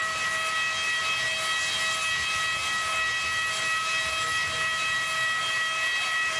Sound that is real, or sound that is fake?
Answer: real